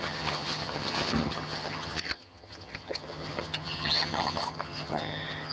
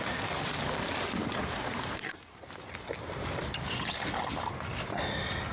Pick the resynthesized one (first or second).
first